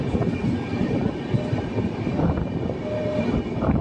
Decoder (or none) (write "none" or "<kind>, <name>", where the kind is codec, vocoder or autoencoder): vocoder, BigVGAN v2